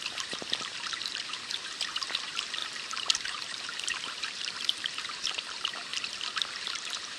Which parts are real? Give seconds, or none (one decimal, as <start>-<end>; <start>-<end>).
5.9-6.5